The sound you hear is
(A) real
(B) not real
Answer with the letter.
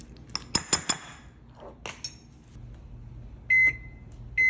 A